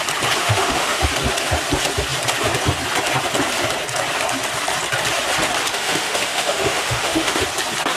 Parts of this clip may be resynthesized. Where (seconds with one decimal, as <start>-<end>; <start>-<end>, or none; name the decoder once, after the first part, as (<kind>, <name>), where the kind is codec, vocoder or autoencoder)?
0.4-1.0 (autoencoder, DAC-VAE); 5.7-7.4